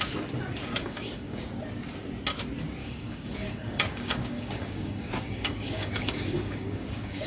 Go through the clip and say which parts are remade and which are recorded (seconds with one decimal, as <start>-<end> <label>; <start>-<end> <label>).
0.0-0.8 recorded; 0.8-1.5 remade; 1.5-2.8 recorded; 2.8-7.3 remade